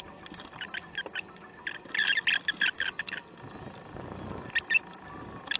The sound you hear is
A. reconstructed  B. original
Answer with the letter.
B